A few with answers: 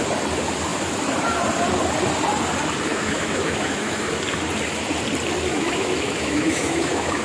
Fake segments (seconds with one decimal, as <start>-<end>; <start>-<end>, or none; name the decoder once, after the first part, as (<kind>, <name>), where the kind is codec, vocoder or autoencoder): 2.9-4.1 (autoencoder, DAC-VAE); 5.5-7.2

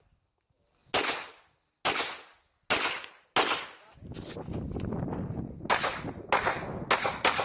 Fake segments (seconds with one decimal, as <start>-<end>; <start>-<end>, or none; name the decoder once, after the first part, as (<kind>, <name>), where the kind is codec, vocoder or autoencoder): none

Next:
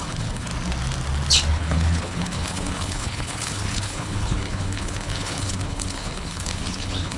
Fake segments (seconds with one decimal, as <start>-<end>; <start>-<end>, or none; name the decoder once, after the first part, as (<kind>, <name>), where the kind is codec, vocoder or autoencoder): 0.0-0.5 (codec, HILCodec); 1.5-7.2